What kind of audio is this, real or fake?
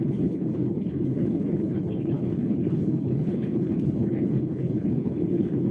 fake